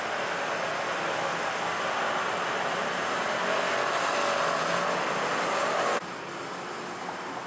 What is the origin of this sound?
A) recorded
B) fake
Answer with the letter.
A